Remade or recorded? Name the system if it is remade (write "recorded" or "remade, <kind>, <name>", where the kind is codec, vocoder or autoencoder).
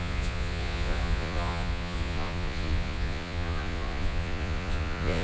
remade, vocoder, Vocos